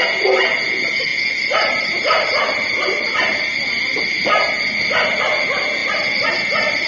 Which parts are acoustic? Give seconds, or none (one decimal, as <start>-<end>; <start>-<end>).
0.0-6.9